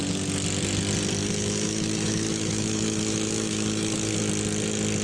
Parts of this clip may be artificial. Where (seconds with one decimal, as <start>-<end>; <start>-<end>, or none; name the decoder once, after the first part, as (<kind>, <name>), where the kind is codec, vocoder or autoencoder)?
1.2-4.2 (autoencoder, DAC-VAE)